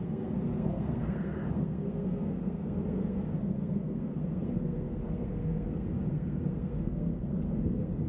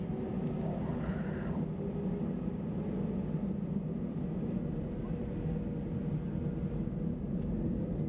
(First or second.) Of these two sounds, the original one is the second